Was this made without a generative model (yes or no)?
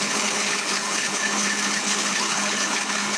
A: no